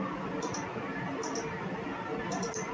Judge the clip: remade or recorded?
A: recorded